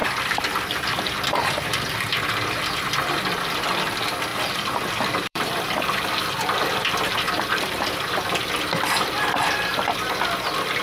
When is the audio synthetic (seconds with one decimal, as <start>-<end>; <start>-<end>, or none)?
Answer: 0.0-2.6; 4.3-8.5